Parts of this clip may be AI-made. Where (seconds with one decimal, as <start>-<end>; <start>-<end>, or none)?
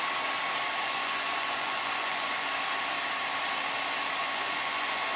0.8-2.5; 4.2-5.2